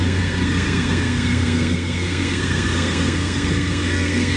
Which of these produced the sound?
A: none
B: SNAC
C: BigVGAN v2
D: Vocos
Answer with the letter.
B